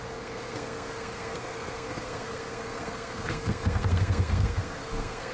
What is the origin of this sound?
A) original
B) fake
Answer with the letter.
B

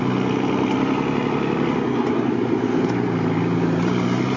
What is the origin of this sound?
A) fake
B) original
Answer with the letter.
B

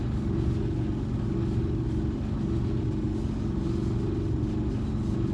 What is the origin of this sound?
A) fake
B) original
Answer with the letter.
B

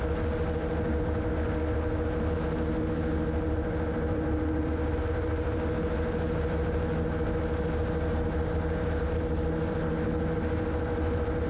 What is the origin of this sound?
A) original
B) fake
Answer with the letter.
A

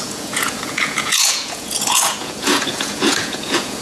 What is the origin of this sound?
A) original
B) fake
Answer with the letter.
B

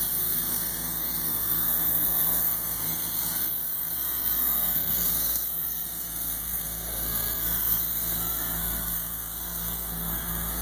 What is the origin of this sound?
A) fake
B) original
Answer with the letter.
A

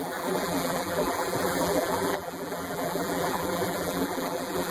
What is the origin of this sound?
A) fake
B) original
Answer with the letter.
A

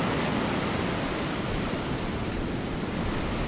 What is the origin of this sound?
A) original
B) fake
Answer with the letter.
A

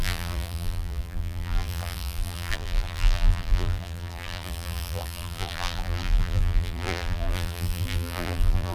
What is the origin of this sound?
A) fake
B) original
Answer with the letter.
A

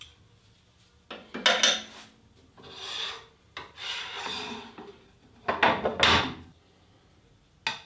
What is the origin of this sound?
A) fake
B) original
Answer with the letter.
B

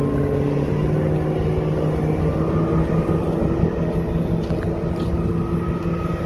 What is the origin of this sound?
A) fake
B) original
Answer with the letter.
B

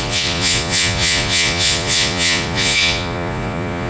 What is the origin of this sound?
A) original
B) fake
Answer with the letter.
B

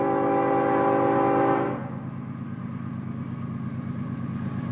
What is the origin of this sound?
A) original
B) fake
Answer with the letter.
A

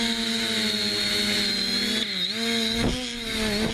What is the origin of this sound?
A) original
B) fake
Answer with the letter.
A